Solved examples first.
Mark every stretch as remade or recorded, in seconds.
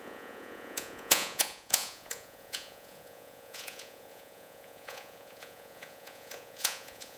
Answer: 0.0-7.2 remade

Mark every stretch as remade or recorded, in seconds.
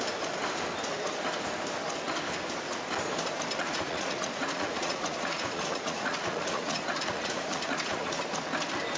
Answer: 0.0-3.6 recorded; 3.6-8.2 remade; 8.2-9.0 recorded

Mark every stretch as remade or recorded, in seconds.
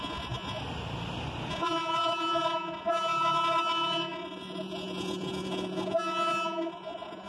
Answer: 0.0-0.6 remade; 0.6-1.5 recorded; 1.5-7.3 remade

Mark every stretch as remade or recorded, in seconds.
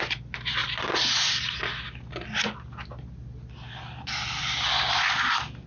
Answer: 0.0-5.7 recorded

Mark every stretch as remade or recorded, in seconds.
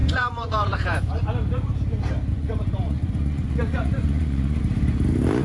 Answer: 0.0-1.2 remade; 1.2-2.3 recorded; 2.3-4.6 remade; 4.6-5.4 recorded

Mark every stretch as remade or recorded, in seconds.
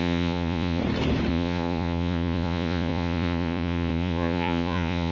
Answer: 0.0-0.8 remade; 0.8-1.3 recorded; 1.3-5.1 remade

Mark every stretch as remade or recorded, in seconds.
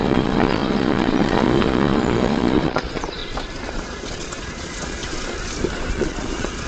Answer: 0.0-3.2 remade; 3.2-3.7 recorded; 3.7-5.0 remade; 5.0-5.9 recorded; 5.9-6.7 remade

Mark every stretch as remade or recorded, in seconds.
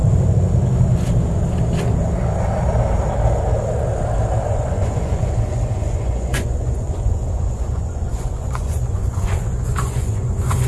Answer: 0.0-4.4 recorded; 4.4-10.7 remade